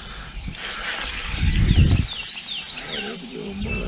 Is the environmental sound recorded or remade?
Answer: recorded